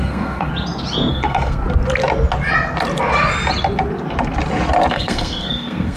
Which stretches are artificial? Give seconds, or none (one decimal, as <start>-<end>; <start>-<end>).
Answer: 0.0-0.5; 1.1-1.6; 4.9-6.0